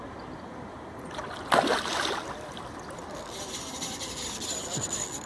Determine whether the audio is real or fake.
fake